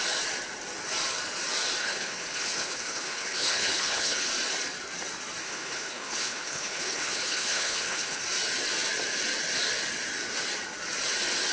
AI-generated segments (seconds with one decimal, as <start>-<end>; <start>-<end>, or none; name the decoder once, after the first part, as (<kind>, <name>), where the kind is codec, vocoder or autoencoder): 1.8-4.3 (codec, HILCodec); 5.4-8.2